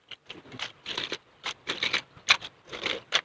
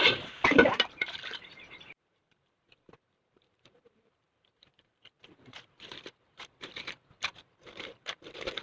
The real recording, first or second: first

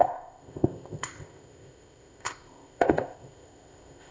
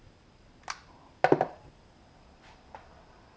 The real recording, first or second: second